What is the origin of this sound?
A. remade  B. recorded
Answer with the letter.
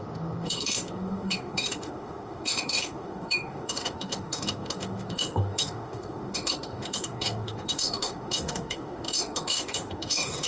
A